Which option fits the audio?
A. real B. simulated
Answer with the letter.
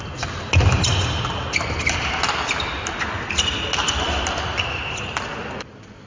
A